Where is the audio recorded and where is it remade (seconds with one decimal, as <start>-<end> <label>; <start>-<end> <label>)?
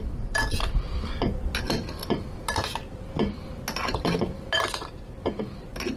0.0-6.0 recorded